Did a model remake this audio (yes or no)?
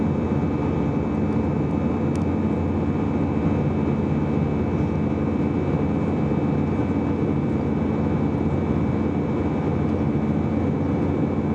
no